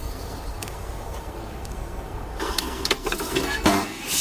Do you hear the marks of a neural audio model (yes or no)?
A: yes